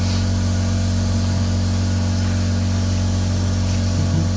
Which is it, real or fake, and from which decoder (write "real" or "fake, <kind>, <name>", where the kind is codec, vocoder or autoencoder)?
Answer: real